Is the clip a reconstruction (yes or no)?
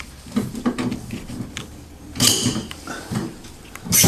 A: no